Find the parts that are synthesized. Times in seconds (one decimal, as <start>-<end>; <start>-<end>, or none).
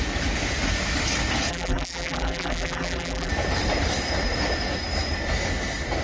1.5-3.3